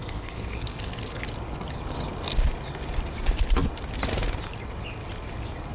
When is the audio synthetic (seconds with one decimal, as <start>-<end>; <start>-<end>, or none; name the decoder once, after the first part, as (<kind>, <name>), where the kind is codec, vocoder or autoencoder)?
0.0-1.2 (codec, SNAC)